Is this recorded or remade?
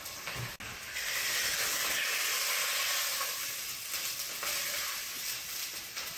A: recorded